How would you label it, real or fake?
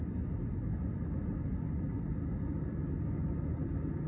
real